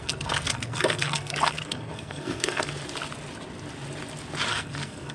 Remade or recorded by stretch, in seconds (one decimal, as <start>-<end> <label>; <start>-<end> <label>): 0.0-2.7 remade; 2.7-4.5 recorded; 4.5-5.1 remade